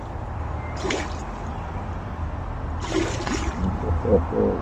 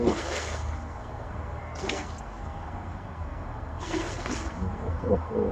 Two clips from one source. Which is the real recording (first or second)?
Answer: first